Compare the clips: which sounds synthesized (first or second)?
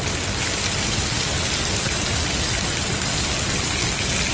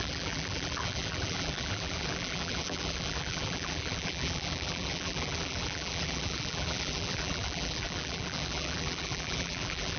second